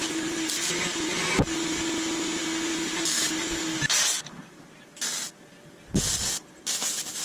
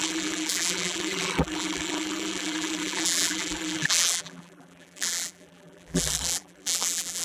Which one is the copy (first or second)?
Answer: second